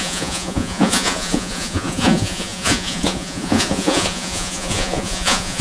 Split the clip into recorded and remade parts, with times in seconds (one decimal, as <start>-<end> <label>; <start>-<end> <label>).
0.0-5.6 remade